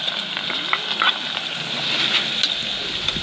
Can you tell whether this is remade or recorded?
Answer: recorded